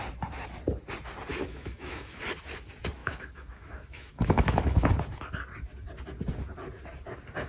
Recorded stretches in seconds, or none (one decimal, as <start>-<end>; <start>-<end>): 0.0-1.3; 2.2-3.0; 4.9-7.5

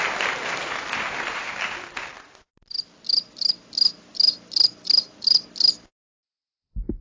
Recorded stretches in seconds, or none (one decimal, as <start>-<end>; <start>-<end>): 0.0-0.6; 2.0-7.0

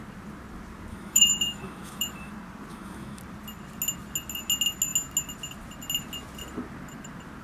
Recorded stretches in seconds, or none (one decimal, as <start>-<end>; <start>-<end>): 0.0-0.9; 2.3-2.7; 3.2-7.4

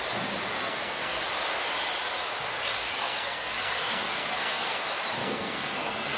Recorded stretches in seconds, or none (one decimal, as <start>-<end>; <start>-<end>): 0.0-0.6; 1.2-2.9; 4.8-5.2

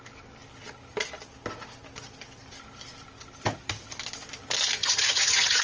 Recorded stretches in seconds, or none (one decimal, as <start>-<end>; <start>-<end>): 0.0-4.8

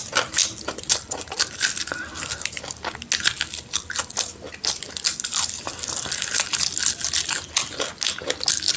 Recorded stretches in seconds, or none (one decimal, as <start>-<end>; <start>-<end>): 0.0-8.8